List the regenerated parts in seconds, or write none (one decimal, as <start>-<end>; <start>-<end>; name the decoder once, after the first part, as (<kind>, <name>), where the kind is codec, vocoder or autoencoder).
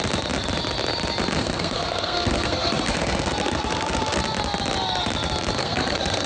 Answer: 1.4-4.2 (codec, SNAC); 5.6-6.3